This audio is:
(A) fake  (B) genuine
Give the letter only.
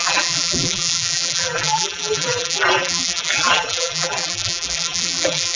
A